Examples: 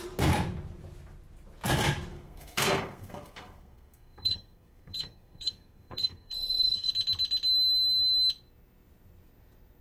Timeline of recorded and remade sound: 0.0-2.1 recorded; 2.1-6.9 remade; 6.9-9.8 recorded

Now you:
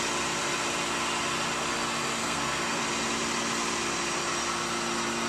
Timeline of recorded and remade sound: 0.0-2.2 recorded; 2.2-2.8 remade; 2.8-5.3 recorded

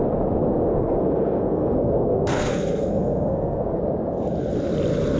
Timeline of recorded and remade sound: 0.0-0.7 recorded; 0.7-3.8 remade; 3.8-5.2 recorded

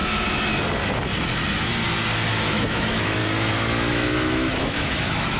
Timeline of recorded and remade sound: 0.0-2.3 recorded; 2.3-3.2 remade; 3.2-3.9 recorded; 3.9-5.4 remade

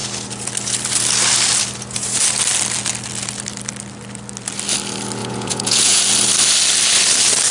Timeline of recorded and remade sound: 0.0-5.2 recorded; 5.2-6.0 remade; 6.0-7.5 recorded

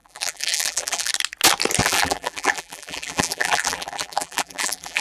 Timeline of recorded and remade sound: 0.0-1.1 remade; 1.1-1.8 recorded; 1.8-5.0 remade